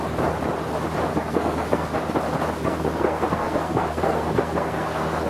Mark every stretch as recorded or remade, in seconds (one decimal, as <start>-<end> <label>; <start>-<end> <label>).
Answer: 0.0-1.1 recorded; 1.1-2.0 remade; 2.0-2.6 recorded; 2.6-5.3 remade